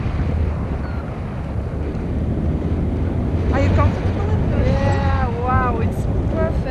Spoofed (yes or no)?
no